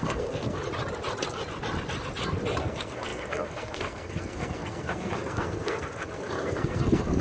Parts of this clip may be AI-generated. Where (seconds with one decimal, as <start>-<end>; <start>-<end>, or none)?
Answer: 0.0-0.6; 2.6-7.2

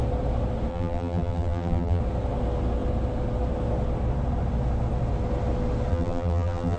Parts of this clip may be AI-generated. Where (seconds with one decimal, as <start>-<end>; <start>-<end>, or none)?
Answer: 0.7-2.0; 5.9-6.8

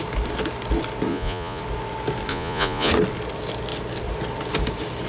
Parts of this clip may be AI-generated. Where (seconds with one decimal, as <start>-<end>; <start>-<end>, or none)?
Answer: 1.1-1.6; 2.3-2.9

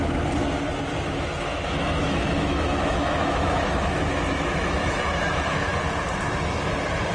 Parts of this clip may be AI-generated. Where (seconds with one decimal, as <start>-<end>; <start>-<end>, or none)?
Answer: 1.5-5.8

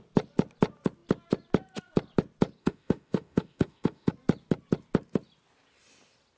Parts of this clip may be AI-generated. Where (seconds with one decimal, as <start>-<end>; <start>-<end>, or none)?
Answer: 2.6-4.1

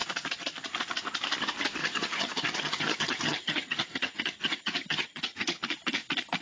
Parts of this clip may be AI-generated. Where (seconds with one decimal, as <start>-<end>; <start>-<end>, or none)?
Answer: 1.8-5.6

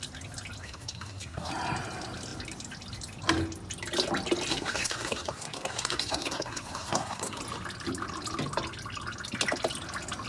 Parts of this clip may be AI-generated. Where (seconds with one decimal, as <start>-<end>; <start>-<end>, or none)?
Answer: 0.6-1.5; 4.5-7.4

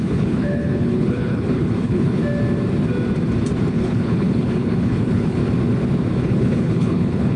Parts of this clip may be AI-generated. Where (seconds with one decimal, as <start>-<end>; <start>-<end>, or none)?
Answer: 0.0-2.2; 3.7-5.4; 6.2-7.4